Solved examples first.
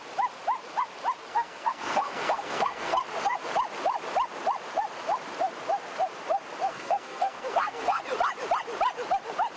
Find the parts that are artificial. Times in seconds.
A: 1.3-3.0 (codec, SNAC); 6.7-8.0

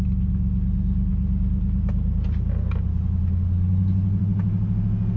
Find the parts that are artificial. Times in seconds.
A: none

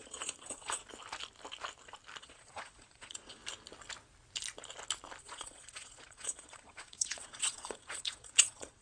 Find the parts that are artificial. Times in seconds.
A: 0.0-0.8 (vocoder, Vocos); 2.2-3.4; 5.2-8.8

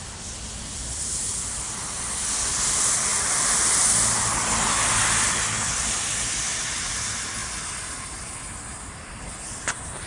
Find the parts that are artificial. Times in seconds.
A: none